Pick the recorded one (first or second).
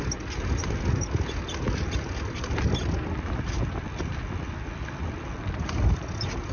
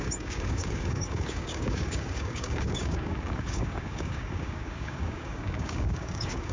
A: first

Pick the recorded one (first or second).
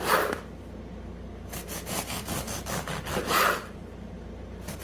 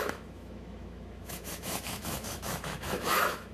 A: first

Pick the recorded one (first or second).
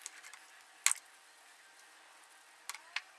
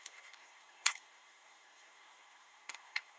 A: first